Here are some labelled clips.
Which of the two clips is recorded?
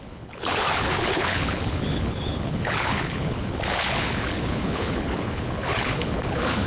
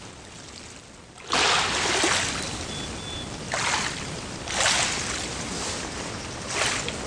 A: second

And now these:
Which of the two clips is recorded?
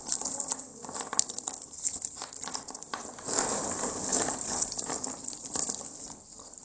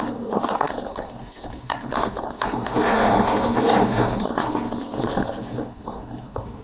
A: first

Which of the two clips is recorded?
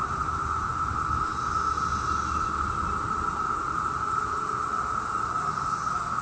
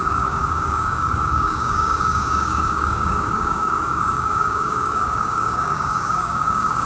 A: first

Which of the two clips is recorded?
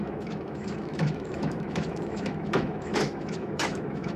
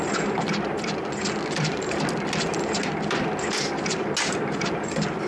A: second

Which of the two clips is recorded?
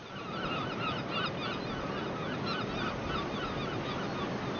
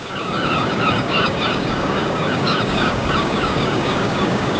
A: first